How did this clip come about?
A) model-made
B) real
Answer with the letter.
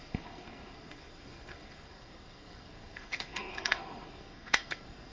A